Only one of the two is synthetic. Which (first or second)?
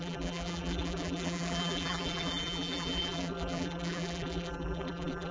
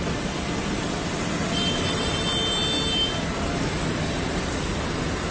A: first